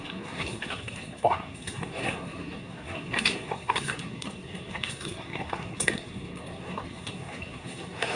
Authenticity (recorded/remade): remade